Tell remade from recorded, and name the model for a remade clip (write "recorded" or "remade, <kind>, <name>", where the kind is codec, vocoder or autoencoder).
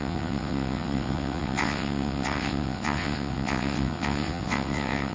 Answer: remade, vocoder, WaveNeXt